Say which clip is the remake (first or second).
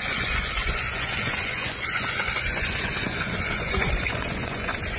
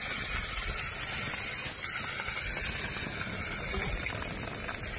first